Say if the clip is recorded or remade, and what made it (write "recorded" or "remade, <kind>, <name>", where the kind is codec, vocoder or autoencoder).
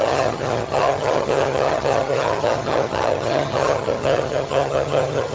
remade, vocoder, HiFi-GAN